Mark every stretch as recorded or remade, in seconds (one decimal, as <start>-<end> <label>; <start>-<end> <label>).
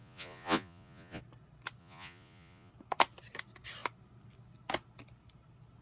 0.0-1.2 remade; 1.2-1.8 recorded; 1.8-2.7 remade; 2.7-5.8 recorded